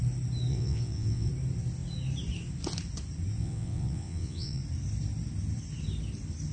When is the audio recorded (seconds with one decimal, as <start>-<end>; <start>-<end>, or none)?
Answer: 0.0-0.5; 1.3-3.4; 4.6-6.5